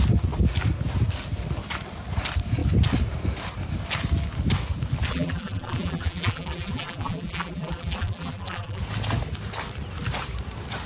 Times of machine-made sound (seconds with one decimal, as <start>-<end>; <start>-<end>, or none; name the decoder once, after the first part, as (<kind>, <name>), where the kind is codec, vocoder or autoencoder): 5.1-8.8 (vocoder, BigVGAN v2)